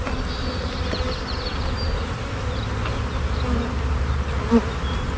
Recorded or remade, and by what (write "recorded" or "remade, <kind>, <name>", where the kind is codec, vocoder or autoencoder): recorded